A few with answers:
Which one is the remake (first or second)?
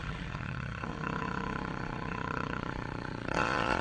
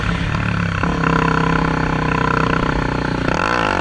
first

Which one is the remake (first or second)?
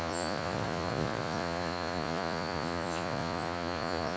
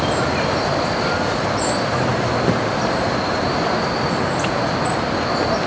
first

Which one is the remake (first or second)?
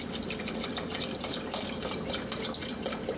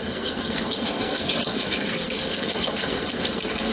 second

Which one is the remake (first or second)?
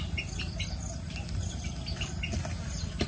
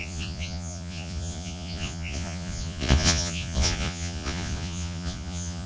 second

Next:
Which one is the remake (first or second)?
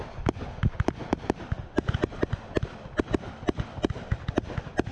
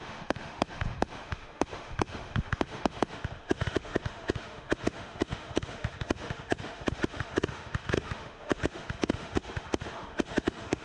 second